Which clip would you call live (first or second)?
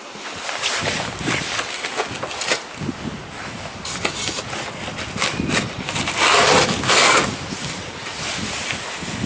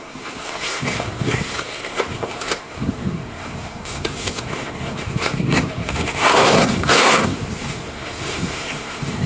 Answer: first